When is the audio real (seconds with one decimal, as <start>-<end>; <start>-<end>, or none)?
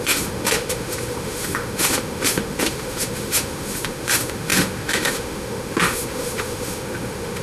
none